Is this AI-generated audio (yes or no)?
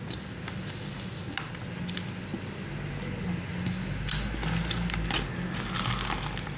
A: no